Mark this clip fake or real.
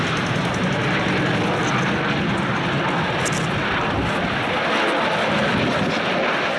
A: real